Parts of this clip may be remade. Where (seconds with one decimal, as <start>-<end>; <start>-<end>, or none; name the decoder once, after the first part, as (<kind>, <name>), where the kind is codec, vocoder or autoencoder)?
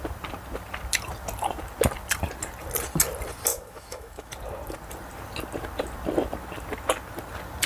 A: 3.5-4.3 (autoencoder, DAC-VAE)